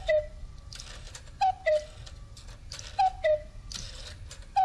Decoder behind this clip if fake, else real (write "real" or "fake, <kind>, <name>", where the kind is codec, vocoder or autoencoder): real